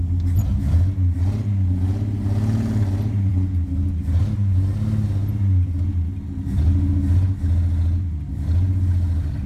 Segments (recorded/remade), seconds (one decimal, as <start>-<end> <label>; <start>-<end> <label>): 0.0-9.5 recorded